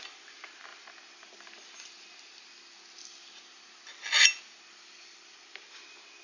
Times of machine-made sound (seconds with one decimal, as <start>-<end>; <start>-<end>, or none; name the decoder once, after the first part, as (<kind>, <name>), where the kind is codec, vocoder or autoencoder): none